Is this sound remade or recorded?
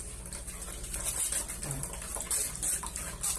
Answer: recorded